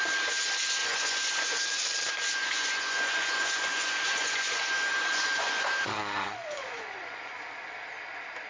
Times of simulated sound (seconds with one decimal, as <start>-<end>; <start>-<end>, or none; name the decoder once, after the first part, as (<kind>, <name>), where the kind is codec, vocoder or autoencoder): 0.8-1.6 (vocoder, Vocos); 2.3-7.3